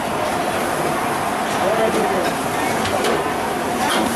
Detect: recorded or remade recorded